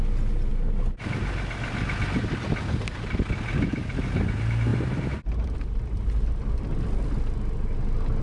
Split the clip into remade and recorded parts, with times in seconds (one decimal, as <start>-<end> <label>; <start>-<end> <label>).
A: 0.0-8.2 recorded